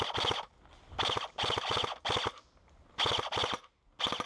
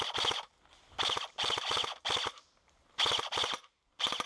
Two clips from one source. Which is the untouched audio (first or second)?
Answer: first